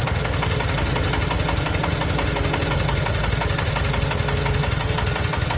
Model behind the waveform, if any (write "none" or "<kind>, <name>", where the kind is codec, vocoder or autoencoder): none